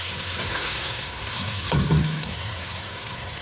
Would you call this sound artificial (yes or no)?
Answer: yes